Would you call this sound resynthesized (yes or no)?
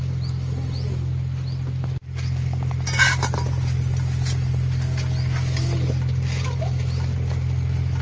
no